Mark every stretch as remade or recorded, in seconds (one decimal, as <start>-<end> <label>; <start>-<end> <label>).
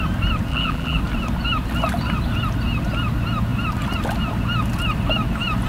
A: 0.0-0.5 recorded; 0.5-1.0 remade; 1.0-5.7 recorded